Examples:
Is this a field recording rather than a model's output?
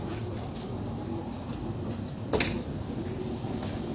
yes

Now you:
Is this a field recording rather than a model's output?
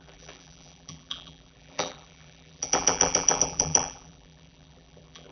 no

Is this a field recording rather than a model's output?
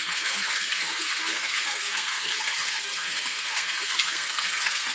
no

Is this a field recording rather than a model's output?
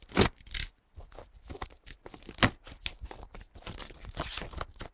yes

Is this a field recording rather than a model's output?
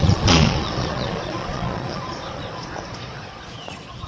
no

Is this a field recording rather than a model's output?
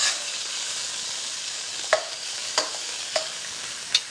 no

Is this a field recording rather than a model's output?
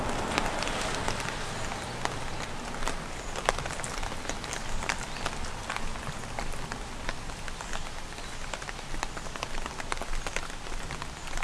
yes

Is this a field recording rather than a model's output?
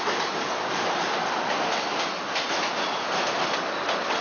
yes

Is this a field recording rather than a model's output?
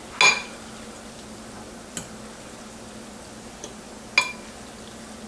yes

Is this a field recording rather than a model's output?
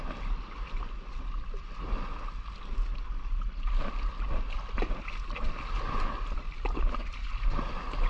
yes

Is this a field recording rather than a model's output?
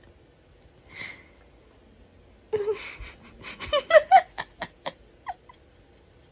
yes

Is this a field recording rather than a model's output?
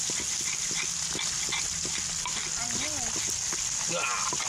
yes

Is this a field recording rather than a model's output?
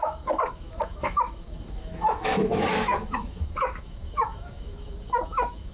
no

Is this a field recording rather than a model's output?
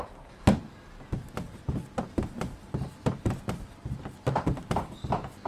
yes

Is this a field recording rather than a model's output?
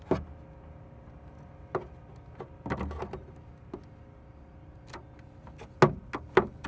yes